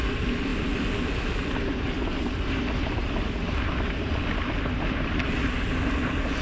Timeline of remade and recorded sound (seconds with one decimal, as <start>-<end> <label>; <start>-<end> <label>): 0.0-6.4 recorded